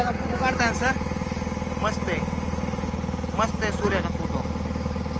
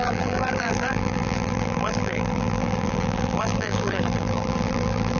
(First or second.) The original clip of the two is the first